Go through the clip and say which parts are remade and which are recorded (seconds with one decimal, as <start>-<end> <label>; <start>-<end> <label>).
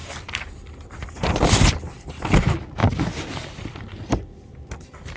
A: 0.0-1.4 remade; 1.4-5.2 recorded